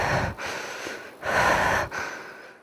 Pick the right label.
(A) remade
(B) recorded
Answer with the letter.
B